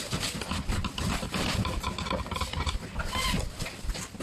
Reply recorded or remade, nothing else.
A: recorded